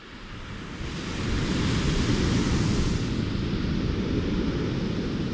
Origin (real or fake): real